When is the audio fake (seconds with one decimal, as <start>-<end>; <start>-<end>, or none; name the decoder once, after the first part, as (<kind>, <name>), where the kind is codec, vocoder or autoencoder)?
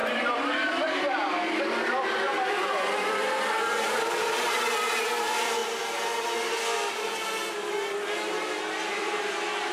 0.0-5.6 (vocoder, BigVGAN v2); 8.9-9.7